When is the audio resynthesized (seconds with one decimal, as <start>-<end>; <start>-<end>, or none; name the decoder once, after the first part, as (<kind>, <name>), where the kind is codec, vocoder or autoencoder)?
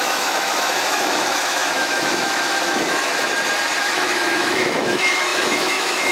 0.0-3.1 (autoencoder, DAC-VAE); 3.8-6.1